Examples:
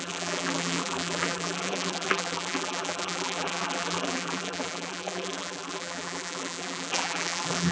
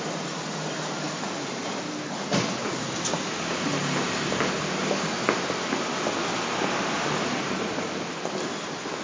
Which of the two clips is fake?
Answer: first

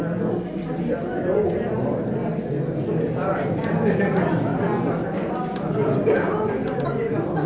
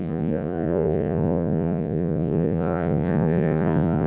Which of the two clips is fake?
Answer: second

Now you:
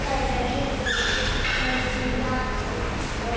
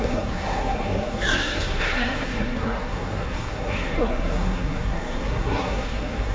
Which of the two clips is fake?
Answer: second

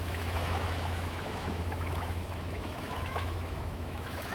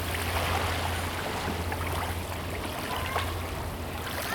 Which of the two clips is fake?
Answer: first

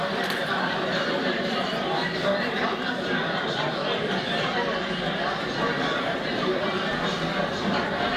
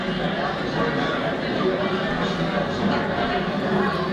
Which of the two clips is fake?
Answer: first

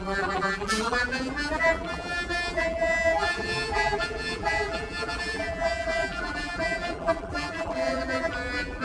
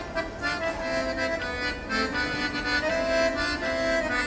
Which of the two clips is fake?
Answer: first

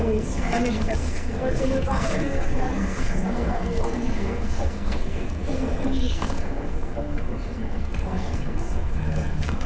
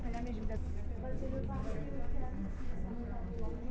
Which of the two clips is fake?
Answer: first